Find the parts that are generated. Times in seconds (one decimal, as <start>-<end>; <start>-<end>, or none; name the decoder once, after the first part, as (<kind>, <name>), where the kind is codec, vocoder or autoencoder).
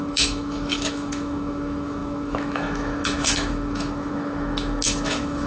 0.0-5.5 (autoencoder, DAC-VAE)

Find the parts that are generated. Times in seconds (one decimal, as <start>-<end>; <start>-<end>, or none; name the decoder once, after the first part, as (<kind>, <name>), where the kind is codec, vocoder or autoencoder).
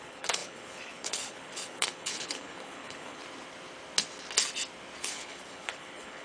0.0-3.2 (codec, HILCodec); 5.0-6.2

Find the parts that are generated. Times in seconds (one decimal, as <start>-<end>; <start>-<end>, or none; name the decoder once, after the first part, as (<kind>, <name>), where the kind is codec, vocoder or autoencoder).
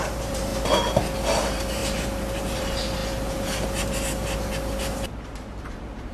0.0-0.5 (vocoder, BigVGAN v2); 1.4-6.1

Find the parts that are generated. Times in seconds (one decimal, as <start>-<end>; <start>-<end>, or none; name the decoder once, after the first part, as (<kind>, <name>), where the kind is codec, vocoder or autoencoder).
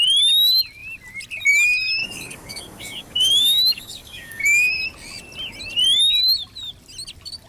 2.0-4.7 (codec, DAC)